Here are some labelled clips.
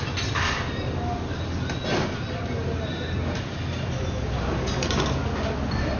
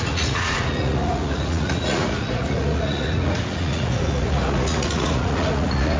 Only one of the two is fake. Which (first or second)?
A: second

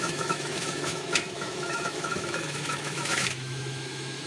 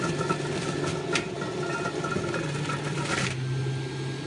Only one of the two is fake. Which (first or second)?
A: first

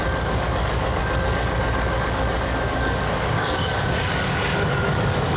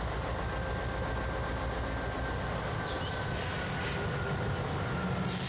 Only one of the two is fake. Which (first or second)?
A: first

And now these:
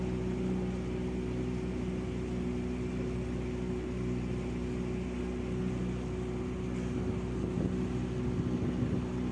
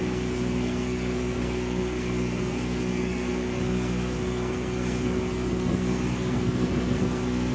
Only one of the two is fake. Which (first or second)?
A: second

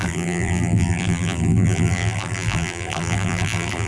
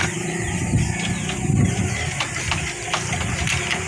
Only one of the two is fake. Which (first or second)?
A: first